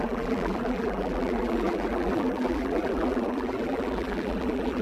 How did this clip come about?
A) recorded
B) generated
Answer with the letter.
B